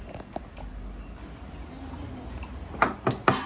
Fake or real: real